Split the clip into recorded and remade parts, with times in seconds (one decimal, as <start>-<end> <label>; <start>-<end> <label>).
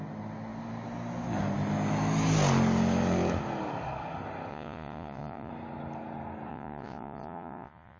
0.0-4.5 recorded; 4.5-5.5 remade; 5.5-6.5 recorded; 6.5-8.0 remade